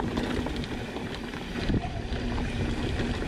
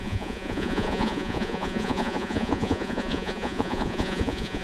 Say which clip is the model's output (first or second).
second